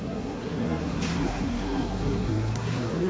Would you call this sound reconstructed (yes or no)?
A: yes